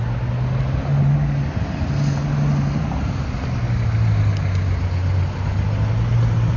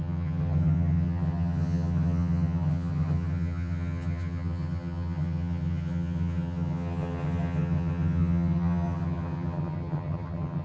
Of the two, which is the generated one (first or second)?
second